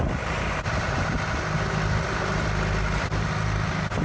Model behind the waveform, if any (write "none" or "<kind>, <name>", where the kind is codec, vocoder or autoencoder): none